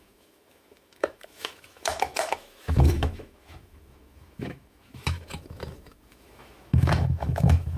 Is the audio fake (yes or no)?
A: yes